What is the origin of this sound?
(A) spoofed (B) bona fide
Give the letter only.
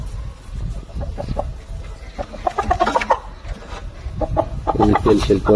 B